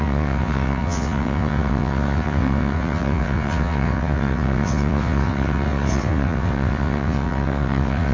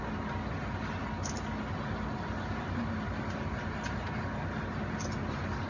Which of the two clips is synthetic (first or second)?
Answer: first